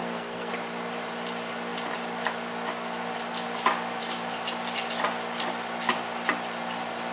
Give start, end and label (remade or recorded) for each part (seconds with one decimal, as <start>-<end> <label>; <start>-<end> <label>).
0.0-0.5 remade; 0.5-7.1 recorded